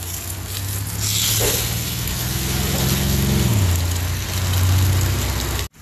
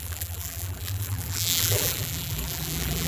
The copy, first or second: second